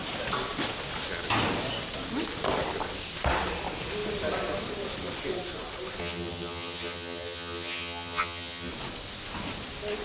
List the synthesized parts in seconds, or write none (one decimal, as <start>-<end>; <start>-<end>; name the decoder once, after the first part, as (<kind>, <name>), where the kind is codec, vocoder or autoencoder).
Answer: 6.0-8.7 (vocoder, HiFi-GAN)